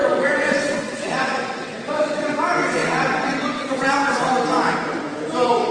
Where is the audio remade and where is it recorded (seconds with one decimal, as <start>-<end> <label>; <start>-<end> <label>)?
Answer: 0.0-2.4 remade; 2.4-2.8 recorded; 2.8-4.3 remade; 4.3-5.7 recorded